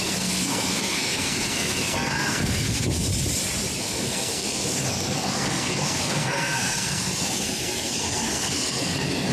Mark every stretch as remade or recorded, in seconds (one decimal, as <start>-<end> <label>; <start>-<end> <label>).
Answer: 0.0-3.1 remade; 3.1-3.8 recorded; 3.8-9.3 remade

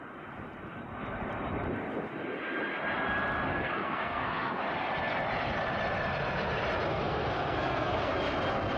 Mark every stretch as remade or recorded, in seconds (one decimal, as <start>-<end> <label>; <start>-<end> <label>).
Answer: 0.0-3.5 recorded; 3.5-4.6 remade; 4.6-6.9 recorded; 6.9-8.1 remade; 8.1-8.8 recorded

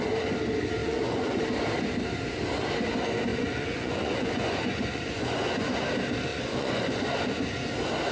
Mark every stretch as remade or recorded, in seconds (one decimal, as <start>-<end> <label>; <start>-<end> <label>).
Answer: 0.0-0.8 recorded; 0.8-1.4 remade; 1.4-3.3 recorded; 3.3-5.7 remade; 5.7-6.3 recorded; 6.3-7.2 remade; 7.2-8.1 recorded